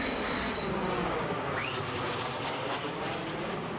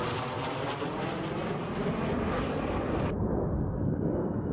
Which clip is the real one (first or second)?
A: second